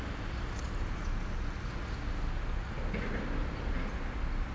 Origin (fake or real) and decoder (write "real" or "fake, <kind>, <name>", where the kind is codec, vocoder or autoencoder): real